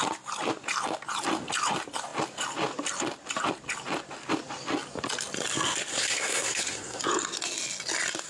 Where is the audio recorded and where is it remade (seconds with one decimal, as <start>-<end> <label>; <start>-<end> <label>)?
0.0-5.9 recorded; 5.9-7.0 remade; 7.0-8.3 recorded